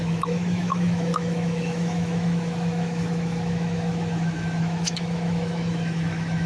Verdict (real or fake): fake